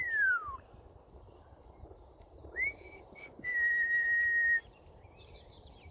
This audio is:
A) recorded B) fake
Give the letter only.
B